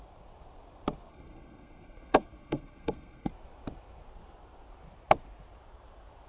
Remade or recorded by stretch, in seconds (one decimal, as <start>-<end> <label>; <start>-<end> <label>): 0.0-1.1 recorded; 1.1-3.3 remade; 3.3-6.3 recorded